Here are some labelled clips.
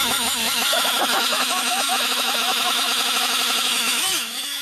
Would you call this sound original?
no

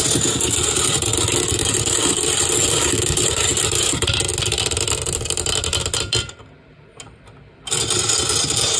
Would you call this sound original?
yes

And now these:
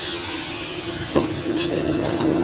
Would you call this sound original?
no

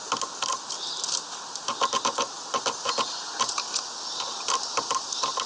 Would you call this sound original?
yes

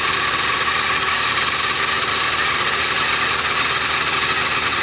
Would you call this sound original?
yes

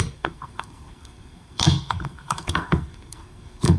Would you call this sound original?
no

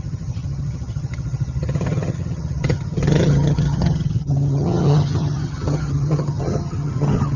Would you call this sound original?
no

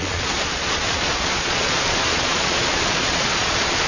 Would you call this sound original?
no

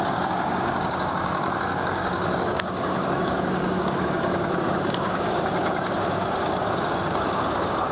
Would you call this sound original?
no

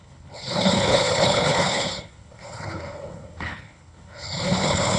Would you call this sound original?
no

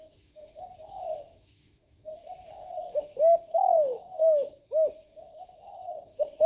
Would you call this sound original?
no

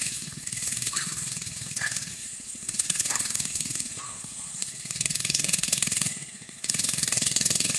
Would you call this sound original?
no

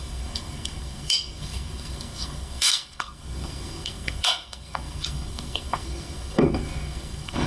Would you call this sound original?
no